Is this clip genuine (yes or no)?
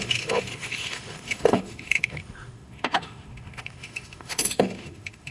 no